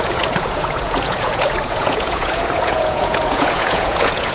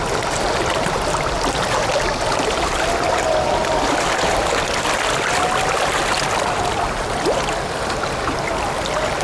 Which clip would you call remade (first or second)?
first